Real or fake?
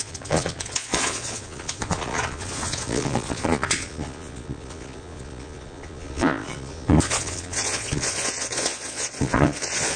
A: fake